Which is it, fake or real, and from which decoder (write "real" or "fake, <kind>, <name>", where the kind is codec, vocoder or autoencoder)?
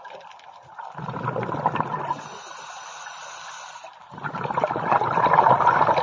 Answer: real